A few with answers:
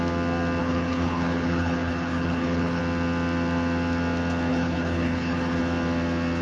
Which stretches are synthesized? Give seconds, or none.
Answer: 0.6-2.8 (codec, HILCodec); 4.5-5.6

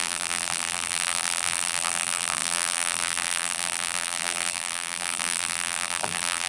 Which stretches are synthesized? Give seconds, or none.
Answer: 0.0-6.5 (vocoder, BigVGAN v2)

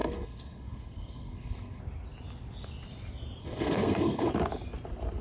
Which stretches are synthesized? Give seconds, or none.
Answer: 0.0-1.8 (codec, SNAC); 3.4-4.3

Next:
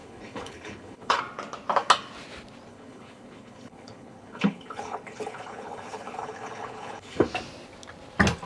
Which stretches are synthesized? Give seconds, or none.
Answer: 0.0-1.2 (codec, HILCodec); 2.7-7.3

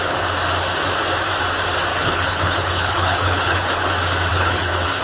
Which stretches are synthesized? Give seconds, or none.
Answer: 1.9-3.9 (codec, HILCodec); 4.3-5.0

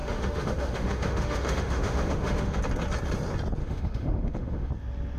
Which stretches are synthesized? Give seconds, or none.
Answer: 0.0-2.6 (autoencoder, DAC-VAE); 3.6-4.7

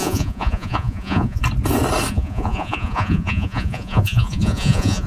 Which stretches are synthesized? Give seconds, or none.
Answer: 0.0-1.4 (vocoder, Vocos); 2.1-5.1